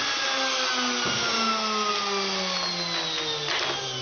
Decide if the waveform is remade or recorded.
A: recorded